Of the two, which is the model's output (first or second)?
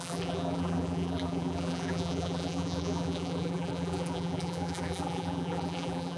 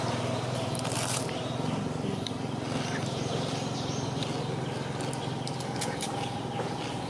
first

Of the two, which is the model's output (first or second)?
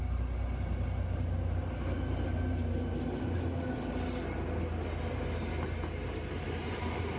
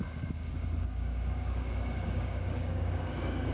second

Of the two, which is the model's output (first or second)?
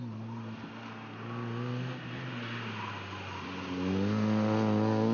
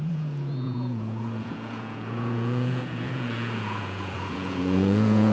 second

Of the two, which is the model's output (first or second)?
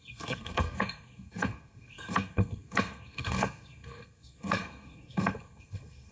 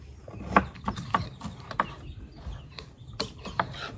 first